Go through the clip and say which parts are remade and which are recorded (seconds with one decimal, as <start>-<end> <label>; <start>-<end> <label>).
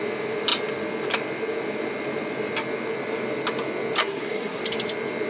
0.0-4.0 recorded; 4.0-4.6 remade; 4.6-5.3 recorded